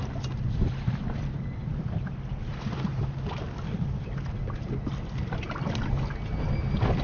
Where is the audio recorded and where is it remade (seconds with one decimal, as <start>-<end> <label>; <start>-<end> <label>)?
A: 0.0-7.0 recorded